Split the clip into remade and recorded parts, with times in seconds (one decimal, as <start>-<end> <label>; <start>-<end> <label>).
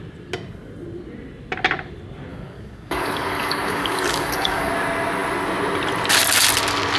0.0-2.3 recorded; 2.3-4.7 remade; 4.7-7.0 recorded